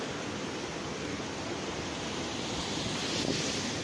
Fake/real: real